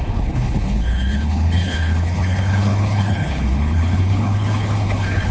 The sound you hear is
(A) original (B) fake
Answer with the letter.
B